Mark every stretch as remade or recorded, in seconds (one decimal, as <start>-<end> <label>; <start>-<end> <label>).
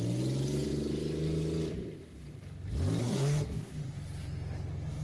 0.0-3.0 recorded; 3.0-3.7 remade; 3.7-5.0 recorded